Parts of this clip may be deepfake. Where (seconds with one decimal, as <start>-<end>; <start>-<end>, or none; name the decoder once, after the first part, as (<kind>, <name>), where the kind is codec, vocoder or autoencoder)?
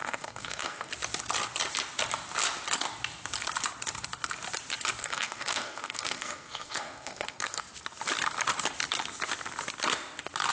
0.0-0.9 (codec, SNAC); 5.0-7.6